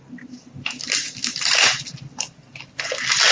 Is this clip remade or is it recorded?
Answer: recorded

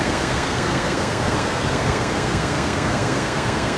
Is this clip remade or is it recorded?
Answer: remade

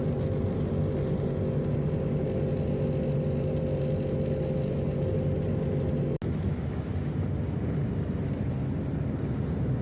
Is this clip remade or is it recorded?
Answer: recorded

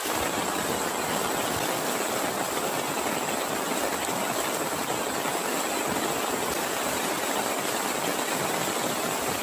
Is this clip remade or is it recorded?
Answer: recorded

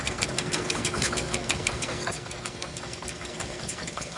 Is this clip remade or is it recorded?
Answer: remade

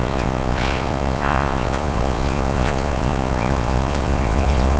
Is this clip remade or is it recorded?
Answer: remade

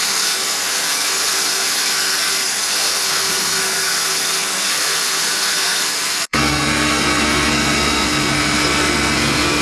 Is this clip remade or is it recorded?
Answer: remade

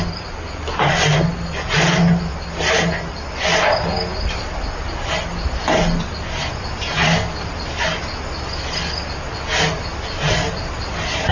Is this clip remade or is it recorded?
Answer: recorded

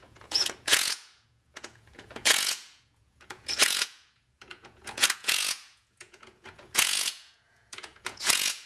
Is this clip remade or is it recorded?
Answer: remade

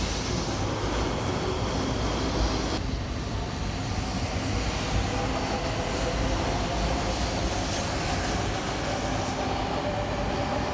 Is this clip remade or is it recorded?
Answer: recorded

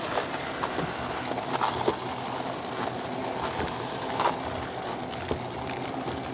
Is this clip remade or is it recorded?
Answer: recorded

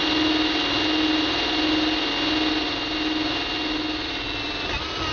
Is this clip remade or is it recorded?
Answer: recorded